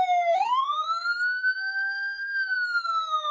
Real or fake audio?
fake